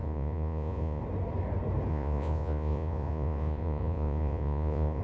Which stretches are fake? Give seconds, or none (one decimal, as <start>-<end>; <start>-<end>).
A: 0.0-1.0; 1.9-5.0